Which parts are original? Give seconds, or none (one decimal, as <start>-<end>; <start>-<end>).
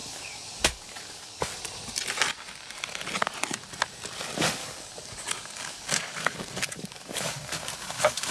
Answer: 1.6-4.6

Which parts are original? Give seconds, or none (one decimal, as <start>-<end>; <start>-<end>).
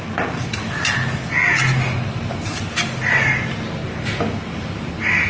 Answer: 0.0-5.3